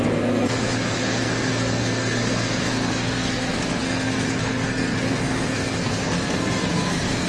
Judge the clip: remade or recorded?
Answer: remade